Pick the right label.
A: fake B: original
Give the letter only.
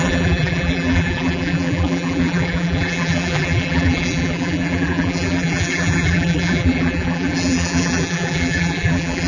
A